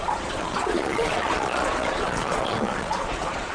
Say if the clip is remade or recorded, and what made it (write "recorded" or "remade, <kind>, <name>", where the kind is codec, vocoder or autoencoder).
remade, vocoder, Vocos